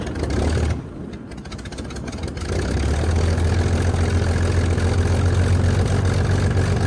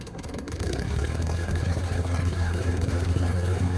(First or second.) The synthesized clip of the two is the second